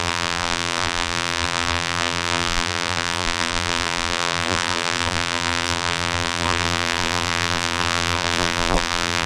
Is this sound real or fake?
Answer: fake